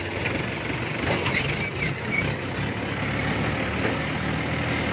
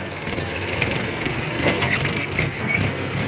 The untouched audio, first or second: first